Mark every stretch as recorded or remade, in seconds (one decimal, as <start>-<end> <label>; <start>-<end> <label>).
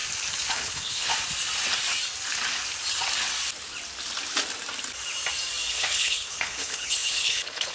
0.0-0.5 recorded; 0.5-1.1 remade; 1.1-5.7 recorded; 5.7-7.7 remade